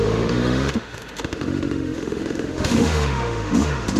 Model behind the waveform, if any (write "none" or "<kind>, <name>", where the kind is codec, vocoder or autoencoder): autoencoder, DAC-VAE